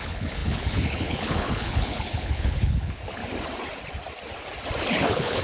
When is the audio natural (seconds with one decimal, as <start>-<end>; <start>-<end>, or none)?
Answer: 3.2-4.8